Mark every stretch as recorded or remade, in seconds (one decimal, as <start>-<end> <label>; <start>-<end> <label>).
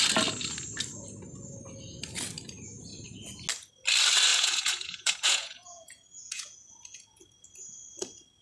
0.0-4.3 recorded; 4.3-7.2 remade; 7.2-8.4 recorded